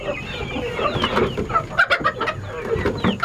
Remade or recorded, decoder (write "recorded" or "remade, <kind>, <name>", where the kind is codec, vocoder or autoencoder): recorded